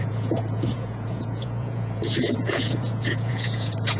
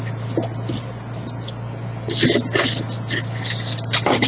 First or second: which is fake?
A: first